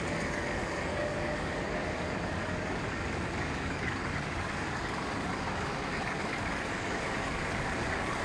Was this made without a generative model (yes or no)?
no